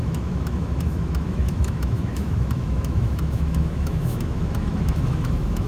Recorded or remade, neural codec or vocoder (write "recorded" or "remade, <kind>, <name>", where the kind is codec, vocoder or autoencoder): remade, autoencoder, DAC-VAE